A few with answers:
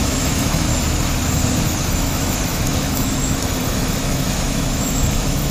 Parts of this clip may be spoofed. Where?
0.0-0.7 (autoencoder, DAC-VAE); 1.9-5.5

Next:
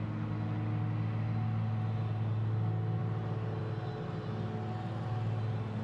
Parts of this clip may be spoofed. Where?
none

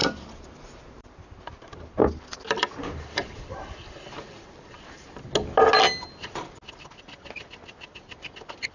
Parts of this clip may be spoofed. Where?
0.0-5.1 (vocoder, BigVGAN v2)

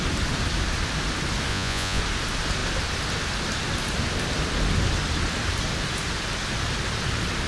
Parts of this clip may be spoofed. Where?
1.5-2.0 (vocoder, Vocos)

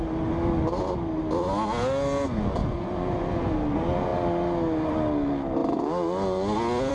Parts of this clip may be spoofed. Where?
2.6-3.5 (vocoder, Vocos)

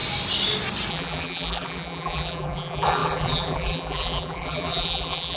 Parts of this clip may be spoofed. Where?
0.9-5.4 (vocoder, BigVGAN v2)

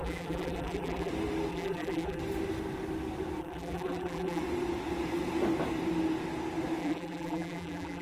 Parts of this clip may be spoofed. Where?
0.0-1.1 (vocoder, BigVGAN v2); 1.5-2.2; 3.4-4.4; 6.8-8.0